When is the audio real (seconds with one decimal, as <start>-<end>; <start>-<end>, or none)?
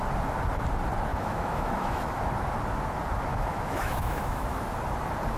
0.0-1.1; 2.3-3.3; 4.6-5.4